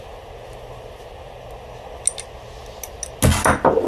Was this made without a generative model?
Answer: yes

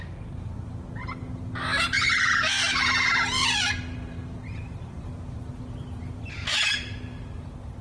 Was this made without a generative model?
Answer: yes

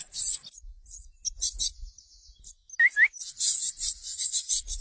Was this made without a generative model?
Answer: yes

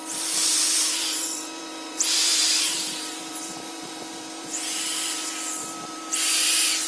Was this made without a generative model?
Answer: no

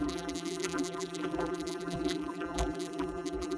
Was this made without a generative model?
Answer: no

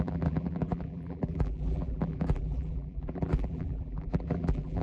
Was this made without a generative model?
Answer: no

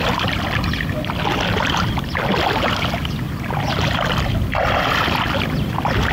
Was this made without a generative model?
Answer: yes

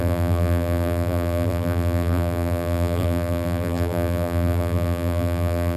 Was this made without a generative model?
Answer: no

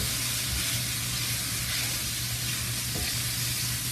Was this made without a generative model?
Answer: yes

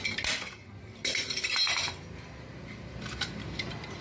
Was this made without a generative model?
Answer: yes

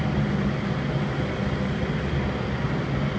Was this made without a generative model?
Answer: yes